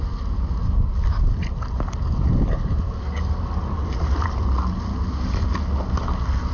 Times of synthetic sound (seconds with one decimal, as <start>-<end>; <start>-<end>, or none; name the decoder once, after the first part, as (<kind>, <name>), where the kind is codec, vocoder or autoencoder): none